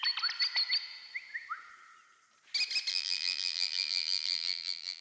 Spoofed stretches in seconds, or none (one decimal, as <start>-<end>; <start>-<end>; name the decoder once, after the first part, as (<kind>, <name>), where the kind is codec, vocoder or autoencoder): 2.9-5.0 (vocoder, BigVGAN v2)